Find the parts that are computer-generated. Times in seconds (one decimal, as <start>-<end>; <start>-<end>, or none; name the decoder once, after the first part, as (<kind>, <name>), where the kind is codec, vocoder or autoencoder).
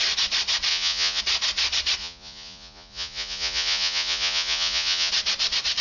0.7-1.2 (vocoder, Vocos); 2.0-5.1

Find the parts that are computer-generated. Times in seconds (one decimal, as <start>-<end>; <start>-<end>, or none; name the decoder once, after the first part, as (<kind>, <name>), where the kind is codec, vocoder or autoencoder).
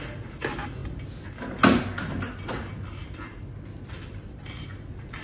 none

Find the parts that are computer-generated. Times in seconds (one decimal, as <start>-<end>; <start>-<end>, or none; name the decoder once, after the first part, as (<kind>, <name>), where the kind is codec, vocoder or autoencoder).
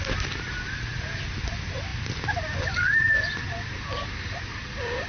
none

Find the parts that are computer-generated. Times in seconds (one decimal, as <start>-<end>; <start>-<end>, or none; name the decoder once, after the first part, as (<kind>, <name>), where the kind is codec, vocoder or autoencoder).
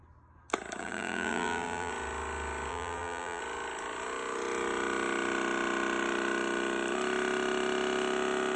0.8-1.9 (vocoder, BigVGAN v2); 2.7-3.4